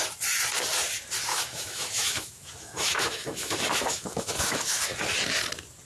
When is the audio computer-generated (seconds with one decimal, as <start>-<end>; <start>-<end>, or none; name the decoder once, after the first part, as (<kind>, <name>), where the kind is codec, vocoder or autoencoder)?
1.3-4.8 (autoencoder, DAC-VAE)